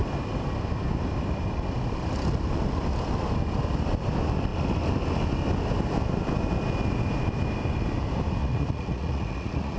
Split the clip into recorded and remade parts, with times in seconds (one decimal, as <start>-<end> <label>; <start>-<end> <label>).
0.0-8.4 recorded; 8.4-9.8 remade